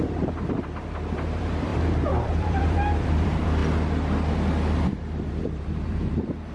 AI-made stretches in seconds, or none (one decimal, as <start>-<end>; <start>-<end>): 0.0-3.6; 4.9-6.5